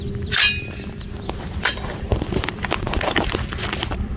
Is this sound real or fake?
fake